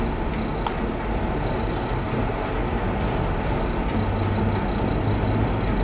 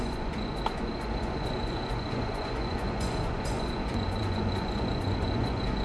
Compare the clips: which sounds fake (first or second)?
second